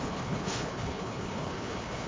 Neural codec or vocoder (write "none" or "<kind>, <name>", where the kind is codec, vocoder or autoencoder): codec, HILCodec